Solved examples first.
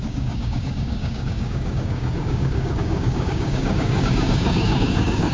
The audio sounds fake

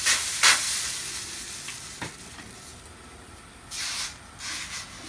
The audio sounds real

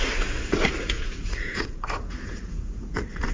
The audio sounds fake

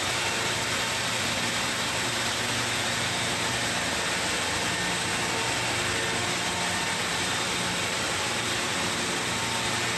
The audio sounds real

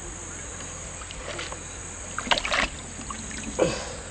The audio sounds real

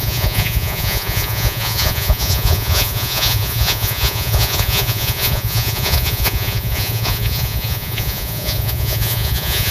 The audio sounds fake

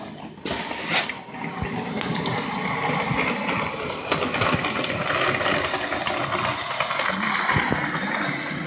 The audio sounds real